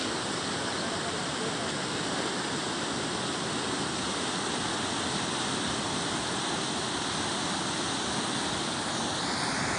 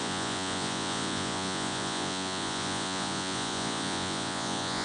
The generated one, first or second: second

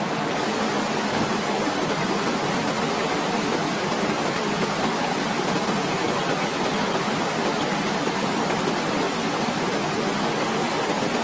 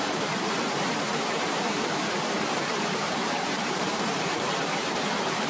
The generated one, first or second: second